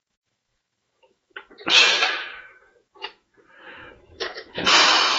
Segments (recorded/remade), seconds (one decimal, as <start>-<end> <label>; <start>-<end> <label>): 0.0-5.2 remade